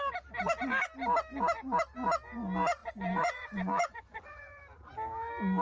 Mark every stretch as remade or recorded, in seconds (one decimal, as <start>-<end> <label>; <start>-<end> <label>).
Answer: 0.0-2.8 recorded; 2.8-4.6 remade; 4.6-5.6 recorded